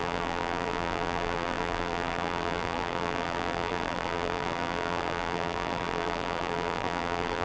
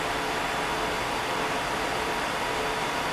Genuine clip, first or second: second